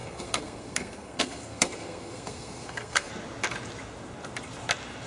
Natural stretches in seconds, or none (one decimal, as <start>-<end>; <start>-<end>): 3.1-5.1